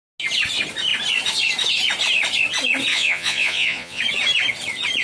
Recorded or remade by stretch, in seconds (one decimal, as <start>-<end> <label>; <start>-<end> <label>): 0.0-2.9 recorded; 2.9-4.0 remade; 4.0-5.0 recorded